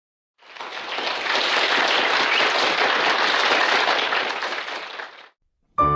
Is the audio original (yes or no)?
yes